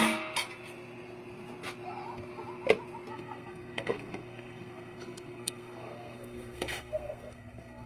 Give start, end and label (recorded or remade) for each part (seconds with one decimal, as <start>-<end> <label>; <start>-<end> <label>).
0.0-3.1 recorded; 3.1-7.9 remade